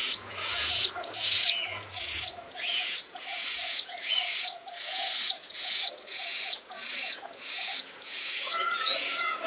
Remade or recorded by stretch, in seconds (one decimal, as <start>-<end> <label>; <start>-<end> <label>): 0.0-9.5 remade